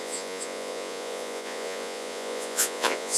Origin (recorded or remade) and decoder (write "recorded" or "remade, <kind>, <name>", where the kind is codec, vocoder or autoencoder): remade, vocoder, Vocos